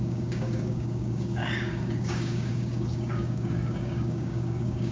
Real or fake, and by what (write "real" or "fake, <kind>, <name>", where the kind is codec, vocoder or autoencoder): fake, codec, DAC